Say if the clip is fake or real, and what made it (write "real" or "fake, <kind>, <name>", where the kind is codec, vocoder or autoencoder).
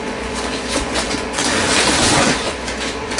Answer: fake, vocoder, Vocos